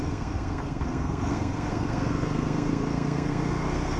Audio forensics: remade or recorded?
remade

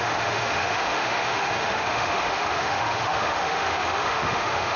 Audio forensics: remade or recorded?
remade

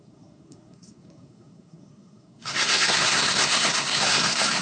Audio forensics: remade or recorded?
remade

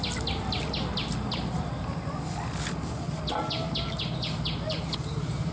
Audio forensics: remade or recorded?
recorded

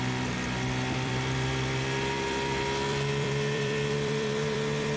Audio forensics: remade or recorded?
remade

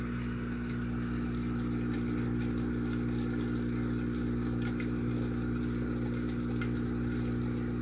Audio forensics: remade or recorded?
recorded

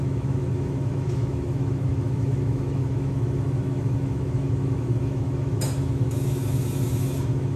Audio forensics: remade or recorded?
remade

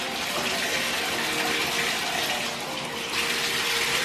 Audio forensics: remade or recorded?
recorded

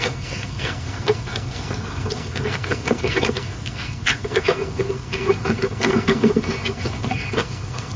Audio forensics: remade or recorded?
remade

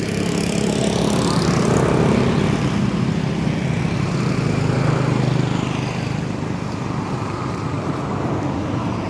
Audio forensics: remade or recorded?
recorded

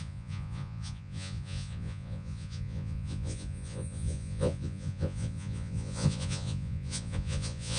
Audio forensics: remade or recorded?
remade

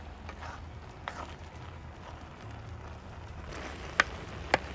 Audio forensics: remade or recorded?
recorded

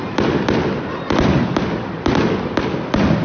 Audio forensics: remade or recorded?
recorded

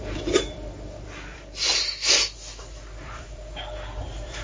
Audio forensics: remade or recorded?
remade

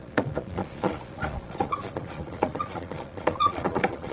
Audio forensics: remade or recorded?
remade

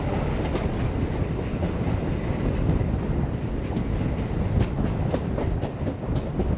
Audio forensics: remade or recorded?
recorded